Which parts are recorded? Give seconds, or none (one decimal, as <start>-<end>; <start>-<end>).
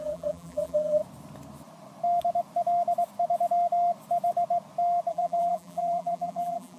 1.0-5.1